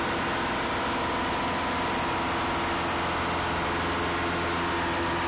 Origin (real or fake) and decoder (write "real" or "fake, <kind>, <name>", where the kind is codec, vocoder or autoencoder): real